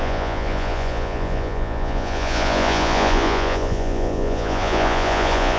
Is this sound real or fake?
fake